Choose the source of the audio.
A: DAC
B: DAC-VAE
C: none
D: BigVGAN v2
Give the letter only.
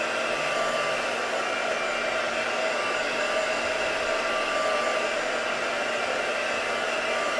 C